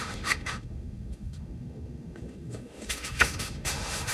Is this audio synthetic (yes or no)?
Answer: yes